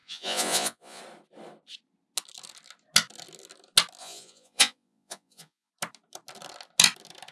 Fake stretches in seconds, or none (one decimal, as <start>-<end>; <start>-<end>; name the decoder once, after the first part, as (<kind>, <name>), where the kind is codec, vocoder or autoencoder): 0.0-1.0 (vocoder, Vocos); 4.0-5.7